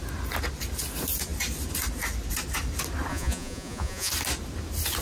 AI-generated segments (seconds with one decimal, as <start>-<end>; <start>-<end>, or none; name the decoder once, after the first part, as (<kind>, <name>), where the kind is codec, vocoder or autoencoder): 3.1-4.1 (vocoder, Vocos)